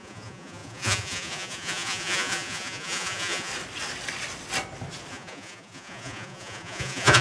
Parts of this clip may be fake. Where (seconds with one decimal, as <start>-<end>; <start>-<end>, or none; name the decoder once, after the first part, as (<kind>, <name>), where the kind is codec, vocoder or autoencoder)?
0.0-3.5 (vocoder, Vocos); 5.1-7.2